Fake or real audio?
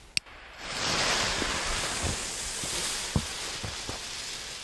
real